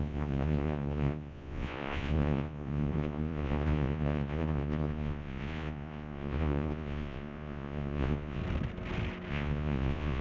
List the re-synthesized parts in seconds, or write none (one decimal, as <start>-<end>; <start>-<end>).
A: 0.0-8.4; 9.3-10.2